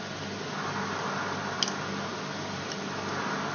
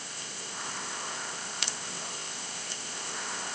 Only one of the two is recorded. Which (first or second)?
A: first